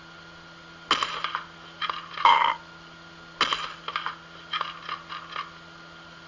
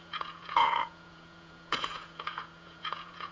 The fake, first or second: second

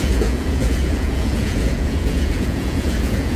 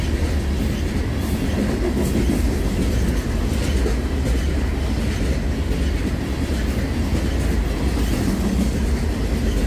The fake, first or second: first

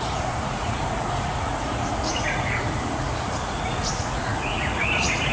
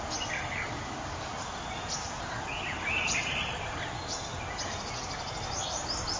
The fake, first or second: first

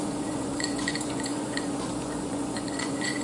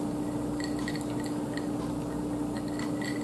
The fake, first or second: first